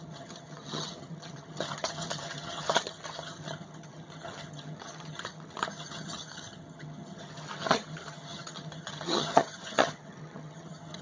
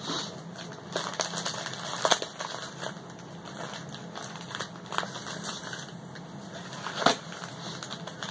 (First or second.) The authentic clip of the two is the second